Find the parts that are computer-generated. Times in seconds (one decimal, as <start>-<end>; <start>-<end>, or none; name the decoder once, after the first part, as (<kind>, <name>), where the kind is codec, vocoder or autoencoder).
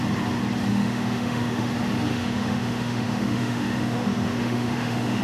0.7-1.7 (autoencoder, DAC-VAE); 2.1-5.2